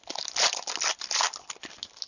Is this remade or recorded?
recorded